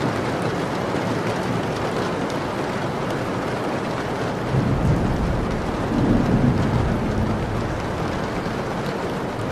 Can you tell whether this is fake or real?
real